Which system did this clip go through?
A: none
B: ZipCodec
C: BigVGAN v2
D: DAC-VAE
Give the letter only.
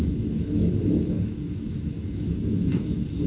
D